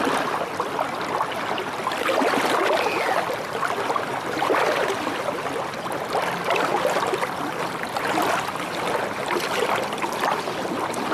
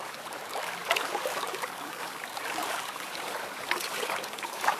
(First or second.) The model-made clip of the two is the second